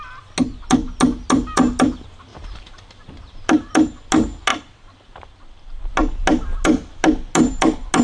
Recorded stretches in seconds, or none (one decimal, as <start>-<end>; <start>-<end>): 0.0-2.3; 3.7-4.5; 5.9-8.0